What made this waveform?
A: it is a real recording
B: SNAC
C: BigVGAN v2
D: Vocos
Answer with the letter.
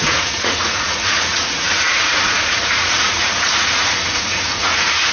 D